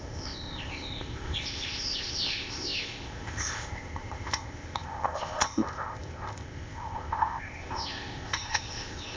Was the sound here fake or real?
fake